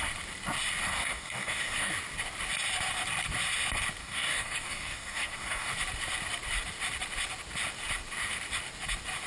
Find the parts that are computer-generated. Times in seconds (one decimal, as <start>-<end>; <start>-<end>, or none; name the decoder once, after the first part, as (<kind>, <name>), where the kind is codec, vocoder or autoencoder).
0.9-1.9 (codec, DAC); 4.0-5.7